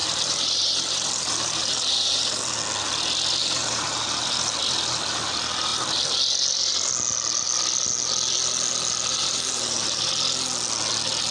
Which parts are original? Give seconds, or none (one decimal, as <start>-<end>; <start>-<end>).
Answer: 2.4-3.4; 4.0-9.1; 10.1-11.3